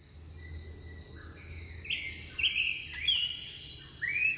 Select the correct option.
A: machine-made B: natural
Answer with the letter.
B